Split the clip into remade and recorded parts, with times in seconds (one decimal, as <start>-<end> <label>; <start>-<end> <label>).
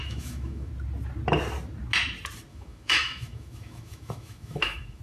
0.0-0.7 remade; 0.7-2.5 recorded; 2.5-5.0 remade